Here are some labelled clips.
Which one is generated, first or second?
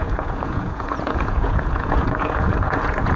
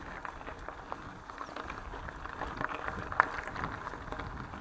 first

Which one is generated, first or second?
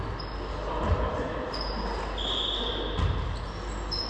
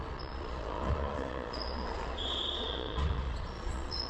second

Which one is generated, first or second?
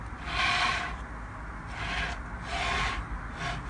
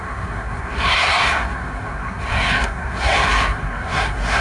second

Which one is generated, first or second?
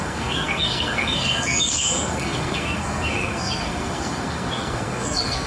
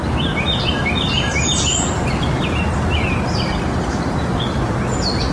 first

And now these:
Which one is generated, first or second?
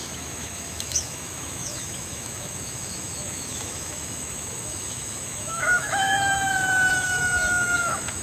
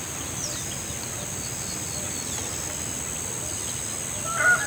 first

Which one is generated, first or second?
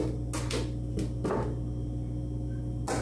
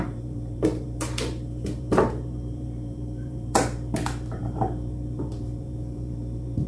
second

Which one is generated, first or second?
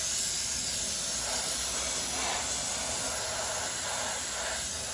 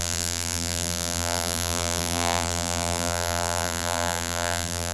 second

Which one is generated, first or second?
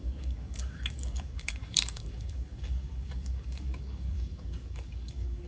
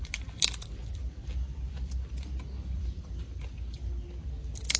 first